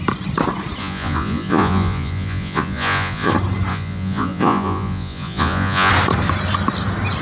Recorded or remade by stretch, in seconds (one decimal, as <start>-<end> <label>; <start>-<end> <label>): 0.0-0.8 recorded; 0.8-3.3 remade; 3.3-3.7 recorded; 3.7-5.9 remade; 5.9-7.2 recorded